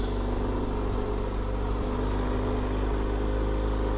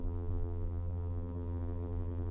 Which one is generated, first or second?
second